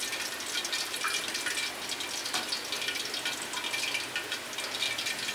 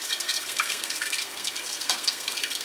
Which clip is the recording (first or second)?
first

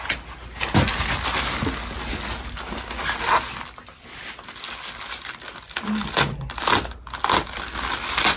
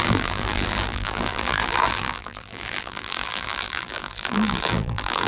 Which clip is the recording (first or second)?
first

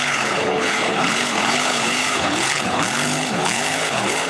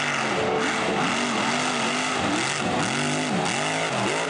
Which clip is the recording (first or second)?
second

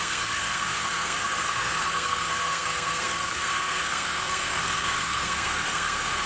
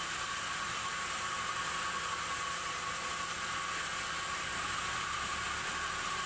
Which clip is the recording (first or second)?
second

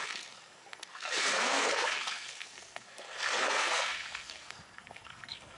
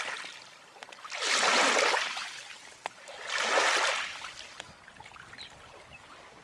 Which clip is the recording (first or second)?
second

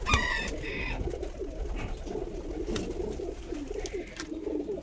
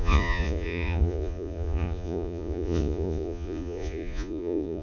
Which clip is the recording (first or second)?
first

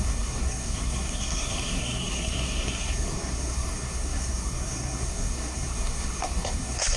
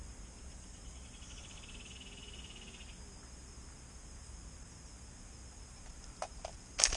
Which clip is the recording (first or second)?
second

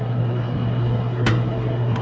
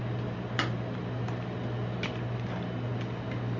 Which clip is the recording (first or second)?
second